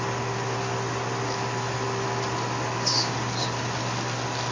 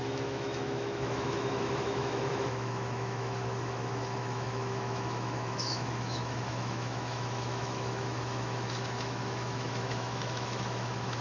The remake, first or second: second